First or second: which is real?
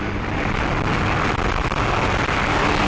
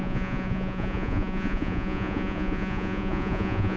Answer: first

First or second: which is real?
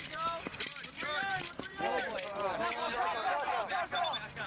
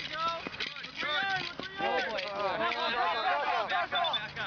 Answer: second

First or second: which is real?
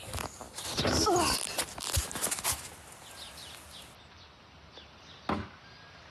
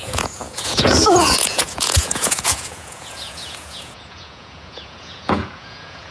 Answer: first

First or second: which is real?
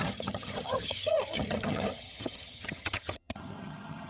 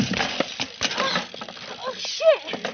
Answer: second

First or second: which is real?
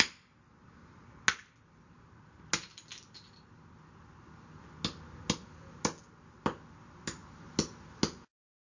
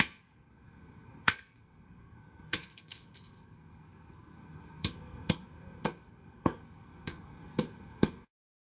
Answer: first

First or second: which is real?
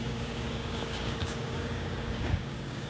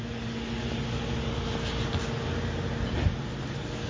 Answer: second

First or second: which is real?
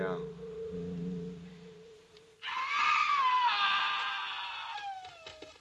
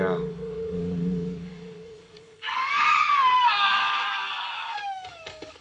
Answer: first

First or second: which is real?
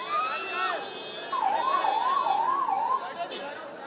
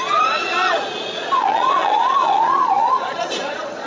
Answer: first